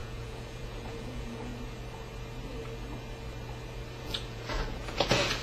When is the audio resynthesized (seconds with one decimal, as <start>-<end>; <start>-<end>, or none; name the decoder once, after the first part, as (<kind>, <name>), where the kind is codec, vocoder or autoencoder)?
0.0-1.5 (vocoder, Vocos); 4.0-5.4